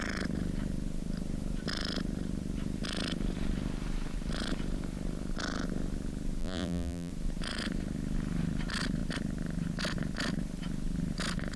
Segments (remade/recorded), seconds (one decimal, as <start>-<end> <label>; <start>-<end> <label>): 0.0-6.4 recorded; 6.4-7.1 remade; 7.1-11.6 recorded